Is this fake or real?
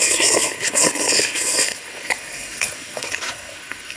fake